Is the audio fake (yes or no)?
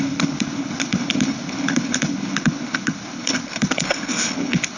yes